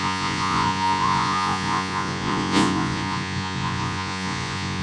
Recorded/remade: remade